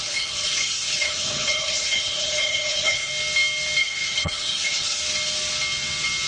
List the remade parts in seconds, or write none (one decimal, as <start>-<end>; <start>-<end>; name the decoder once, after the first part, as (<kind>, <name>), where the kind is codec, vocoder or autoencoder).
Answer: 0.0-3.1 (codec, HILCodec); 3.8-5.0